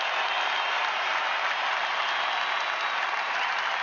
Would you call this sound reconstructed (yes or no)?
no